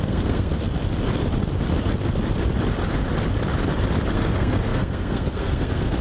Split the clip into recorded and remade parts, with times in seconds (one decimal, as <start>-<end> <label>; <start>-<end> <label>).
0.0-0.5 remade; 0.5-4.1 recorded; 4.1-6.0 remade